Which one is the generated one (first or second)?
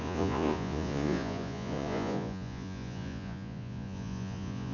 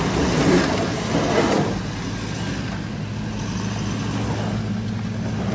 first